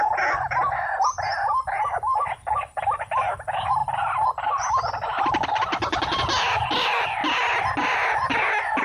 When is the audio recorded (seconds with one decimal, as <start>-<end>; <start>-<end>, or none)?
0.0-8.8